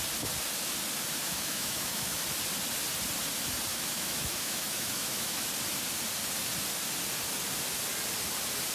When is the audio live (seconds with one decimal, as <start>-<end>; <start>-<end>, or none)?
0.0-1.2; 2.2-3.7; 5.5-8.7